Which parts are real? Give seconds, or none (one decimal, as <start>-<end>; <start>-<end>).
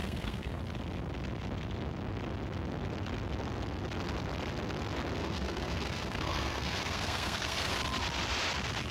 0.6-5.2; 7.7-8.9